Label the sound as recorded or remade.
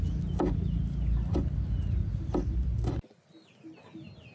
recorded